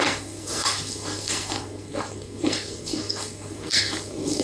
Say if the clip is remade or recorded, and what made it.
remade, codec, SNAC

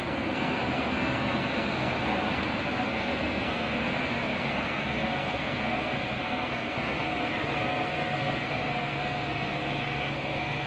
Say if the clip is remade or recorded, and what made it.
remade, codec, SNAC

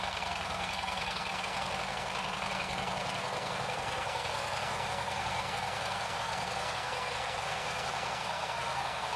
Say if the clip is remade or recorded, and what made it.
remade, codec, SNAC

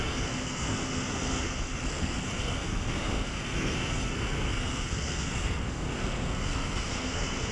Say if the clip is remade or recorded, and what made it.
remade, codec, SNAC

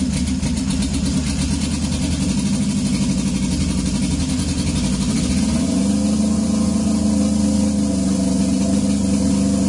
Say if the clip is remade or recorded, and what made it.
recorded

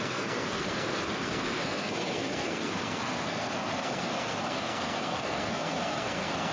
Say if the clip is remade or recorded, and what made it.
remade, codec, SNAC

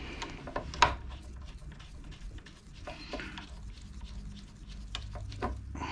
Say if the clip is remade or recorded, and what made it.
recorded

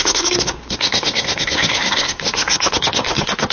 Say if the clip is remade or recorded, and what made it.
remade, codec, SNAC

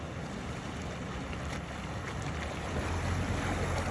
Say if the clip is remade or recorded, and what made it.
recorded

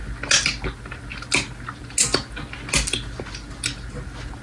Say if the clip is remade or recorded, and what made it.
recorded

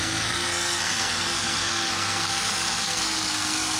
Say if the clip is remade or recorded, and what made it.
remade, codec, SNAC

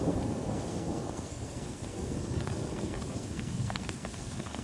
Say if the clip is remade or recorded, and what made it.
remade, codec, SNAC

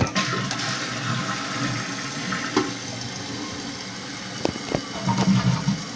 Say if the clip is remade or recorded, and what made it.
recorded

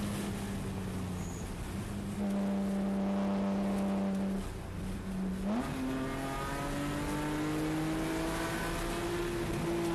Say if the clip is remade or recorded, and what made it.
recorded